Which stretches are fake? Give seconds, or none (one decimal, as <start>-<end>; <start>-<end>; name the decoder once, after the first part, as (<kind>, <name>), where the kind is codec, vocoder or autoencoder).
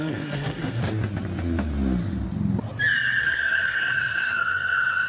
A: 0.0-0.8 (codec, SNAC); 3.2-5.1